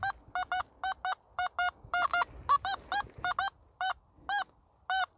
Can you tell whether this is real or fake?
real